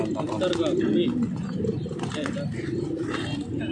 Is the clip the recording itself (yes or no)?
yes